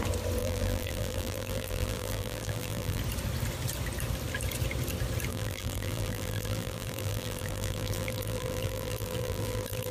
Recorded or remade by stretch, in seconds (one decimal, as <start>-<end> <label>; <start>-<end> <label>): 0.0-0.4 recorded; 0.4-3.0 remade; 3.0-5.3 recorded; 5.3-9.9 remade